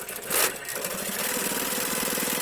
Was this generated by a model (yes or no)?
no